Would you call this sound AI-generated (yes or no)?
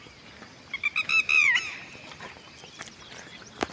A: no